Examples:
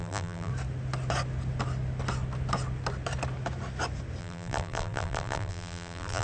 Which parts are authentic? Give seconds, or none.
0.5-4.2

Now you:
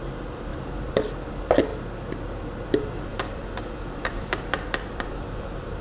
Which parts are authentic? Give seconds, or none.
0.0-0.5; 1.1-3.1

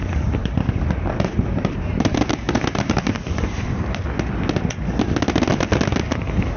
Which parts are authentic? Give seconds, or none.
0.0-0.4; 4.1-6.6

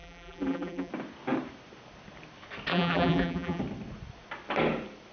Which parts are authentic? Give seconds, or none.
0.9-2.7; 3.6-5.1

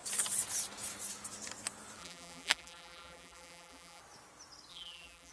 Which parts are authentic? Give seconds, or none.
0.0-2.0; 4.0-4.7

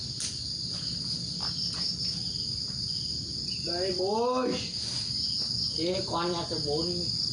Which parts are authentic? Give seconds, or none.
0.0-5.7; 6.5-7.3